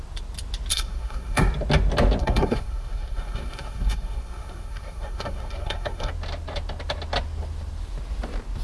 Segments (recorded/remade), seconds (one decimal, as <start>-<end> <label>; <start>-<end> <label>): 0.0-0.7 recorded; 0.7-1.4 remade; 1.4-2.2 recorded; 2.2-6.1 remade; 6.1-8.6 recorded